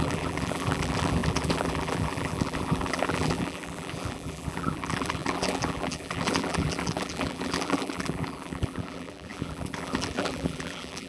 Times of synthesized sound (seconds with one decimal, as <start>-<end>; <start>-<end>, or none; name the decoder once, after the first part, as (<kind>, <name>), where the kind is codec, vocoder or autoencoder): 0.0-11.1 (vocoder, BigVGAN v2)